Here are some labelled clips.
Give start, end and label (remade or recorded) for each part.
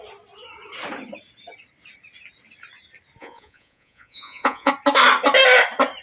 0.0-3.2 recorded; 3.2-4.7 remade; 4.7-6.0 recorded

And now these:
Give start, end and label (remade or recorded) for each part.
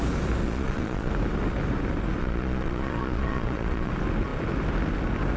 0.0-0.4 recorded; 0.4-1.1 remade; 1.1-2.2 recorded; 2.2-3.9 remade; 3.9-5.4 recorded